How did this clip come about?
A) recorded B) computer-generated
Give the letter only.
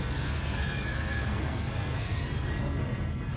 B